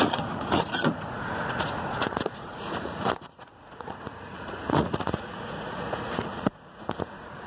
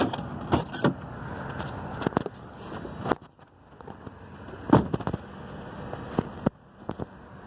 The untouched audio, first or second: second